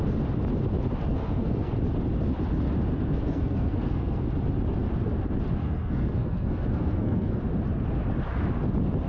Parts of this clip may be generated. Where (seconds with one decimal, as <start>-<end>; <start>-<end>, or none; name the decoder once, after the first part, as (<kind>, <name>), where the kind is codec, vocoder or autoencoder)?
1.1-1.7 (codec, SNAC); 2.9-4.3; 5.6-7.4